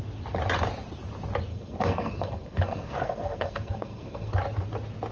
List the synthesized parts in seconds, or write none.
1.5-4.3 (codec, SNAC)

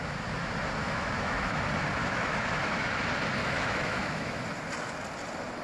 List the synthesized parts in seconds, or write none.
0.8-1.6 (autoencoder, DAC-VAE); 2.0-2.9; 3.4-4.4

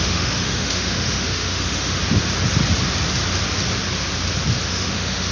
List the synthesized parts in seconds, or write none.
0.0-2.0 (autoencoder, DAC-VAE); 4.7-5.3

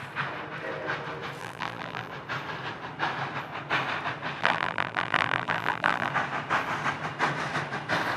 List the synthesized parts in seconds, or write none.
1.4-2.1 (vocoder, BigVGAN v2); 4.4-6.1